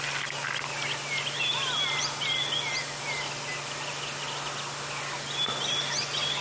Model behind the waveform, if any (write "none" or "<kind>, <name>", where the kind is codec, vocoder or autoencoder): none